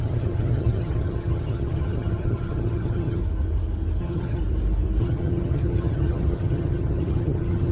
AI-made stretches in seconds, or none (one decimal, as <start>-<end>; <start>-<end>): 0.0-3.2; 4.0-4.4; 5.0-7.7